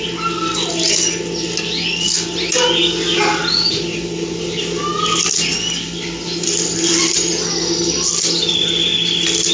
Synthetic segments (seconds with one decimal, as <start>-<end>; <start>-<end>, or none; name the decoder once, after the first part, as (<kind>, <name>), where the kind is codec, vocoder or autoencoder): none